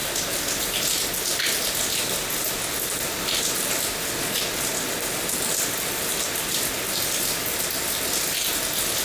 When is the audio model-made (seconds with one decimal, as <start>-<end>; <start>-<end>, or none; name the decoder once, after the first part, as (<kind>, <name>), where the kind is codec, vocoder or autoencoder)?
none

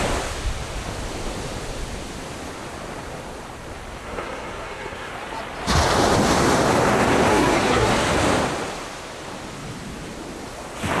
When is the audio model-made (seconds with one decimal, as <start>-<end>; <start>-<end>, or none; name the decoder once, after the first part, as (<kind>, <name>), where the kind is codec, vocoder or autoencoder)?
4.0-5.1 (codec, SNAC); 7.3-7.9

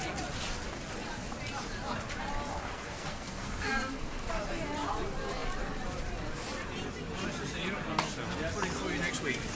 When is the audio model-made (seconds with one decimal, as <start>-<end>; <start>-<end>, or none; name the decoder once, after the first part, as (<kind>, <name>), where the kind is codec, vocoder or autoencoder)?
2.5-4.3 (codec, SNAC)

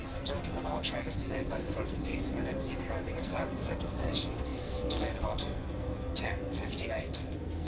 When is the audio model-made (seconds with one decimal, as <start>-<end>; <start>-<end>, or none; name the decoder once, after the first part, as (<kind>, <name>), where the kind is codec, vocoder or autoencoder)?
0.0-7.7 (codec, SNAC)

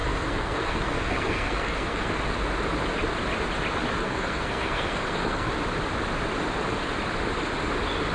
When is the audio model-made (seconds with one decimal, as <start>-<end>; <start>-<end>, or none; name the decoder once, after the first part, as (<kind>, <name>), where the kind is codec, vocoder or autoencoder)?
0.0-2.1 (codec, SNAC); 4.0-5.5

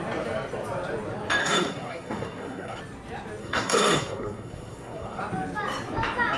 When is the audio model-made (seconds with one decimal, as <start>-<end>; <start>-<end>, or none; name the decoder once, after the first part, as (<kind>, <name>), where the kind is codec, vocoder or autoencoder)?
1.4-2.8 (codec, SNAC); 3.4-5.2

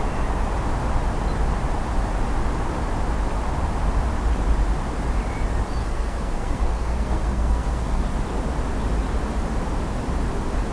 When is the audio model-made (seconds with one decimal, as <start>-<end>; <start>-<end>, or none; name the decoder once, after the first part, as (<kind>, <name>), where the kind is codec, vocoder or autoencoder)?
5.8-8.0 (codec, SNAC)